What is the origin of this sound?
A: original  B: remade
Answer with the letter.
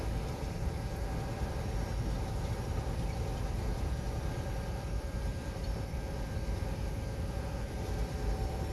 B